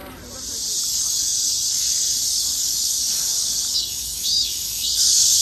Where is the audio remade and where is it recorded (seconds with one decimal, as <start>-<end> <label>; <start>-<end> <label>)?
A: 0.0-0.8 recorded; 0.8-5.4 remade